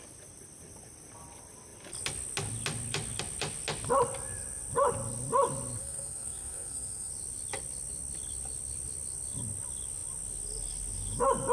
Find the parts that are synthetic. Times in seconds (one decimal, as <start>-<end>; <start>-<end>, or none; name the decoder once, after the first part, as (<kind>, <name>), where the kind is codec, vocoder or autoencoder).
5.8-7.1 (codec, SNAC)